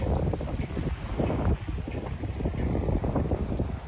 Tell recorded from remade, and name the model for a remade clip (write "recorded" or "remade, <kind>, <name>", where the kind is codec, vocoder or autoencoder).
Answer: recorded